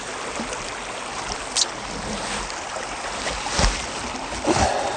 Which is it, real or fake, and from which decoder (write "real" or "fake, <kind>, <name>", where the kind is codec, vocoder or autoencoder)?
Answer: real